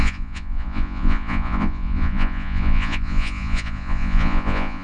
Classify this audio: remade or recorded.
remade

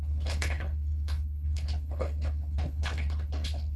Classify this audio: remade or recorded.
remade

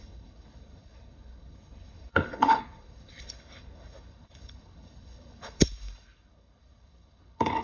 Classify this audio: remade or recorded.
remade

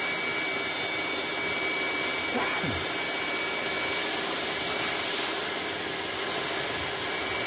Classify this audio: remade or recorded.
recorded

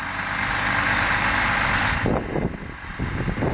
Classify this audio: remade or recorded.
recorded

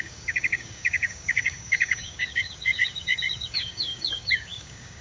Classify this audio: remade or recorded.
remade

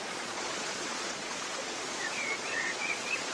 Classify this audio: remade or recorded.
remade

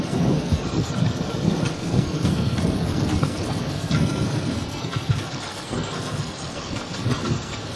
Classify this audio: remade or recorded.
remade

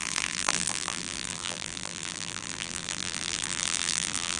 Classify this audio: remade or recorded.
remade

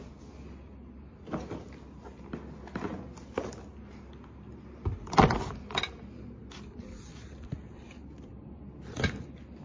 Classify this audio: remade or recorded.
recorded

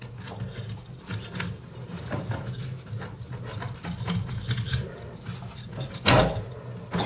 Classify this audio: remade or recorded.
recorded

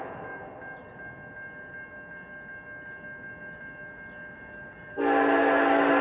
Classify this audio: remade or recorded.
recorded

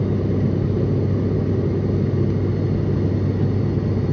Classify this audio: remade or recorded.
recorded